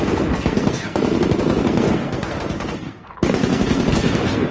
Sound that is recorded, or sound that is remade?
remade